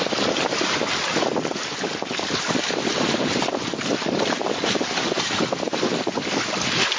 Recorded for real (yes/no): yes